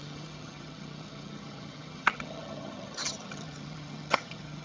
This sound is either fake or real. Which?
fake